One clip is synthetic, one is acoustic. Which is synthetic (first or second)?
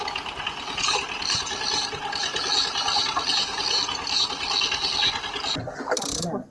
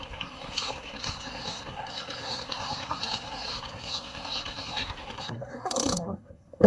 second